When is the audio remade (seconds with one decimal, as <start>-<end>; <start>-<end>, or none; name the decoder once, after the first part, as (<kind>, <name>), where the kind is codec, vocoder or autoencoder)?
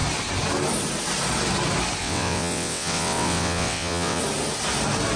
2.0-4.2 (vocoder, WaveNeXt)